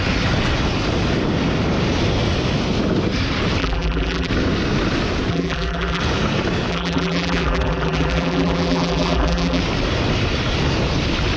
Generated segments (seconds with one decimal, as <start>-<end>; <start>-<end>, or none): 3.6-4.3; 5.3-6.0; 6.7-9.6